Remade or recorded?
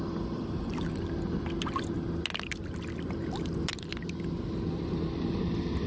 recorded